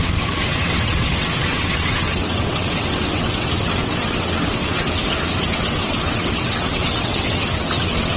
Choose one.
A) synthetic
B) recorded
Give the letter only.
A